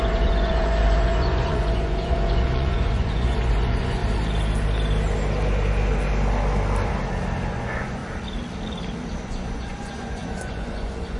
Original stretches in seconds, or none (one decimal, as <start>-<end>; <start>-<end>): 4.0-7.5; 8.0-9.2